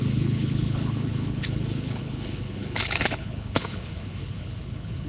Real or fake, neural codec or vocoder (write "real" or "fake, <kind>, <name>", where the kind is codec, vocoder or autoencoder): fake, codec, HILCodec